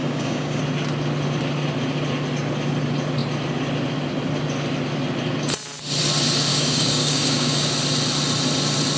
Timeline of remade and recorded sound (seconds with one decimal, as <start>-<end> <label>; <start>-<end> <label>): 0.0-0.6 remade; 0.6-6.5 recorded; 6.5-7.7 remade; 7.7-9.0 recorded